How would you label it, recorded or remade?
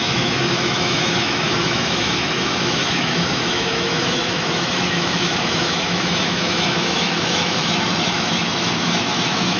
remade